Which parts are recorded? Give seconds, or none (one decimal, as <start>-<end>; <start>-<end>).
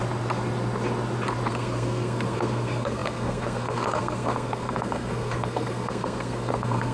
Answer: 0.0-1.5